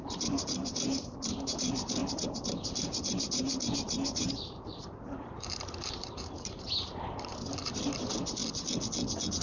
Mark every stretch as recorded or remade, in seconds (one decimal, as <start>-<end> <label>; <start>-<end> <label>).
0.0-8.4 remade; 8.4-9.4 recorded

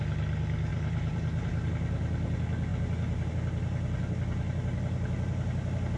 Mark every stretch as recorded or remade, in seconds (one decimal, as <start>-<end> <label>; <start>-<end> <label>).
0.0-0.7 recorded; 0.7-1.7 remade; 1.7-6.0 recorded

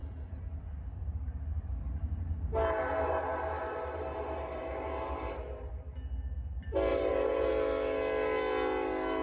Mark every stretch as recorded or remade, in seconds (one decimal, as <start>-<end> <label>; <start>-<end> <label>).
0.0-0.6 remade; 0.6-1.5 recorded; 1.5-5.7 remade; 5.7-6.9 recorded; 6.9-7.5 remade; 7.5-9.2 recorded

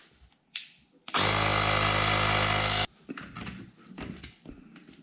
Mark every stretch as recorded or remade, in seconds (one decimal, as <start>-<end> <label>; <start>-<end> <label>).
0.0-5.0 recorded

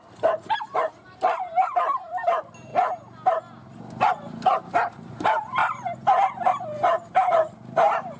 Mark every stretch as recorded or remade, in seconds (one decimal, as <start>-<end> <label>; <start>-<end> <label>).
0.0-2.7 remade; 2.7-4.1 recorded; 4.1-5.6 remade; 5.6-8.2 recorded

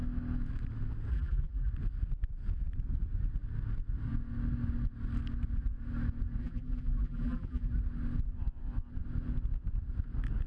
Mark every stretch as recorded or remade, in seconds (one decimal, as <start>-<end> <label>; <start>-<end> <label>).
0.0-1.1 recorded; 1.1-1.7 remade; 1.7-6.4 recorded; 6.4-7.7 remade; 7.7-10.5 recorded

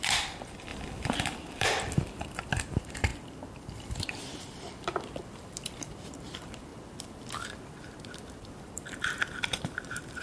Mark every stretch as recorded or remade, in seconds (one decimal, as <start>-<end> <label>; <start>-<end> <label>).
0.0-6.7 remade; 6.7-8.4 recorded; 8.4-10.2 remade